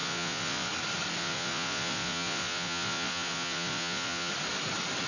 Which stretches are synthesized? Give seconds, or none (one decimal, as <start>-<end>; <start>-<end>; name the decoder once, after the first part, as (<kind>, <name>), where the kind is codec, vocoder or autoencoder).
0.0-0.7 (vocoder, Vocos); 1.2-4.3